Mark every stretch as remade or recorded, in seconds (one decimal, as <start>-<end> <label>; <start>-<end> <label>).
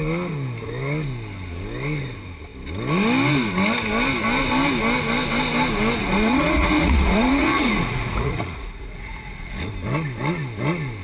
0.0-6.0 recorded; 6.0-9.7 remade; 9.7-11.0 recorded